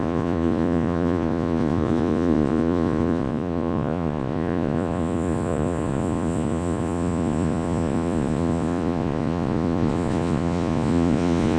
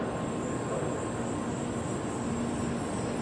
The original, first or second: second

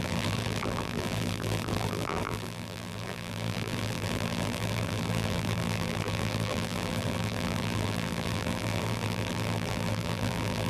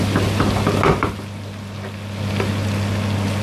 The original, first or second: second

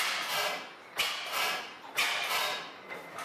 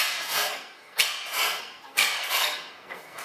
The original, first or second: first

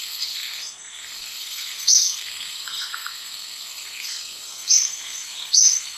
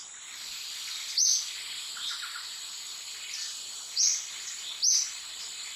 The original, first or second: second